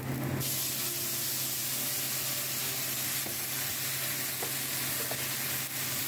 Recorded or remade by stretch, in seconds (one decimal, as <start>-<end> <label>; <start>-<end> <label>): 0.0-6.1 recorded

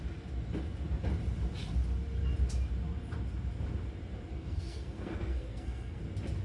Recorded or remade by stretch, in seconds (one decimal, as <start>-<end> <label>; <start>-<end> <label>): 0.0-4.3 recorded; 4.3-6.0 remade; 6.0-6.4 recorded

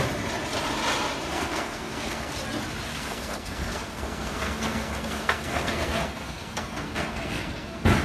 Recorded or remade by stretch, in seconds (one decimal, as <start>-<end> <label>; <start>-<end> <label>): 0.0-1.3 recorded; 1.3-2.3 remade; 2.3-2.9 recorded; 2.9-8.0 remade

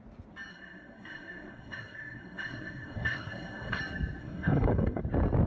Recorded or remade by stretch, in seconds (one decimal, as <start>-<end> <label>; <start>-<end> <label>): 0.0-0.5 recorded; 0.5-3.8 remade; 3.8-4.2 recorded; 4.2-5.0 remade; 5.0-5.5 recorded

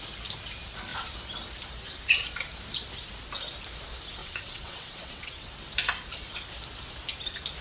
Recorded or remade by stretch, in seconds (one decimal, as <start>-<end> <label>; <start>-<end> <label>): 0.0-4.2 recorded; 4.2-5.5 remade; 5.5-7.6 recorded

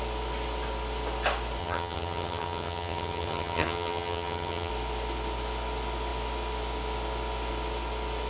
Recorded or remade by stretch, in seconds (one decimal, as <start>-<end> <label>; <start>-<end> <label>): 0.0-1.6 recorded; 1.6-4.7 remade; 4.7-8.3 recorded

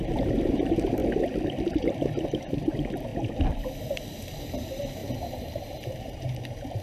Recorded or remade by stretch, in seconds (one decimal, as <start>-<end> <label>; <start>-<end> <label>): 0.0-1.0 remade; 1.0-1.7 recorded; 1.7-3.1 remade; 3.1-4.2 recorded; 4.2-6.8 remade

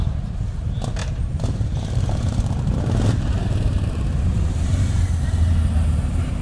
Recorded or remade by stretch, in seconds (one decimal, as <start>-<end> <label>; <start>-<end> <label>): 0.0-1.0 recorded; 1.0-4.8 remade; 4.8-6.4 recorded